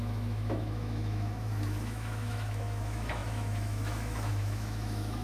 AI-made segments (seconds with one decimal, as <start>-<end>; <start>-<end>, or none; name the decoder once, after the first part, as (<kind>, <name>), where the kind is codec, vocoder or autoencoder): 0.0-5.2 (autoencoder, DAC-VAE)